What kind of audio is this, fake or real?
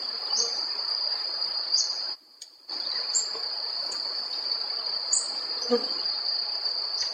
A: fake